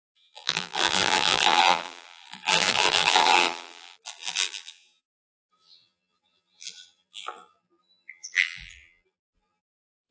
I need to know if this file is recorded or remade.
remade